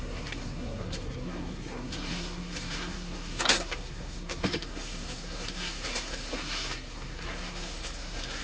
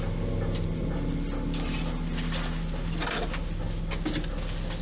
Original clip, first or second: second